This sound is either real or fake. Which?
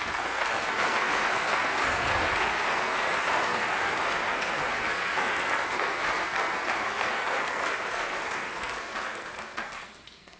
fake